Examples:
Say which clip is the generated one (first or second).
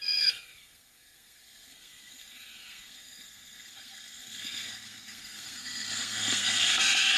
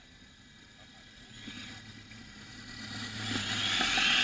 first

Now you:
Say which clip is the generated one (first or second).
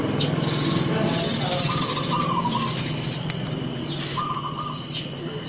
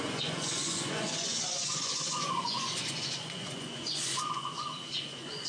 second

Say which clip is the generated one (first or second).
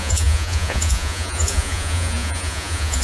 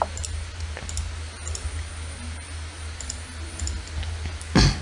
first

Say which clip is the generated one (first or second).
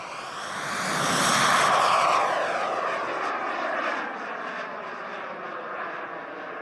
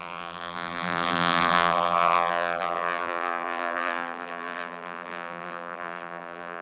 second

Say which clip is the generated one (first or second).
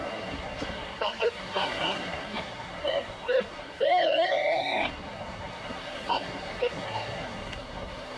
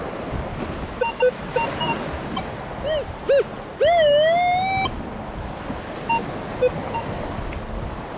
first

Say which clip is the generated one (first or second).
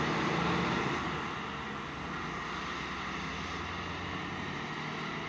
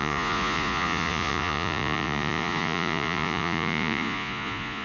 second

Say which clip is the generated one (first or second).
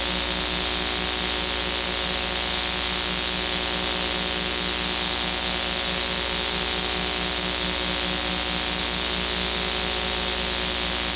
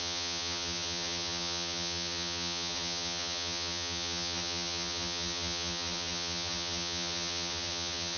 second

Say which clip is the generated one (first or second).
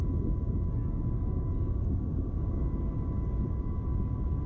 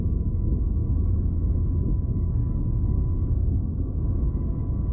second